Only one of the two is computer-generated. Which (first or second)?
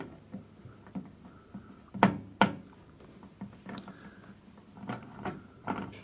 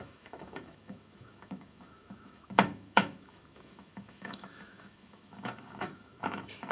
second